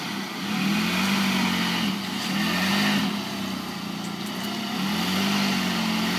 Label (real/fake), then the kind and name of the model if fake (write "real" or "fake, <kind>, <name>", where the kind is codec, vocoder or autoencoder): real